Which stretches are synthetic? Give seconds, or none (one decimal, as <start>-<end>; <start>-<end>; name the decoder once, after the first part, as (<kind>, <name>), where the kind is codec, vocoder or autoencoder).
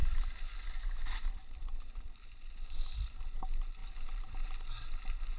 0.0-3.2 (vocoder, BigVGAN v2)